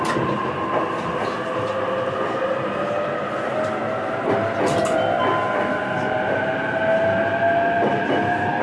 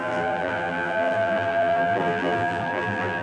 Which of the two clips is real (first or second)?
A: first